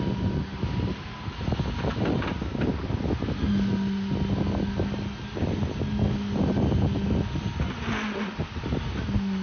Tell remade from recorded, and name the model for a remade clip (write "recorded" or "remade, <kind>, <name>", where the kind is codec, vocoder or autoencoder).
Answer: recorded